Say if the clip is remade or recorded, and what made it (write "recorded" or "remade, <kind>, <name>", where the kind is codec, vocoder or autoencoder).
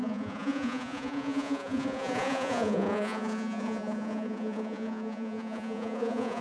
remade, vocoder, Vocos